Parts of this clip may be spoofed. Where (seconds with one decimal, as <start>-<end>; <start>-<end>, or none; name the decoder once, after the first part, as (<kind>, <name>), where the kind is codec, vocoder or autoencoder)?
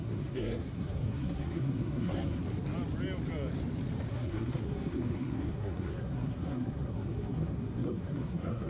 0.0-2.4 (codec, SNAC); 4.1-8.7